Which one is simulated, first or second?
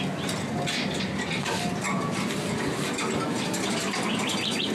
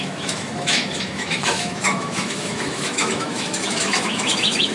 second